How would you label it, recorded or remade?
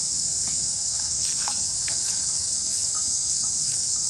remade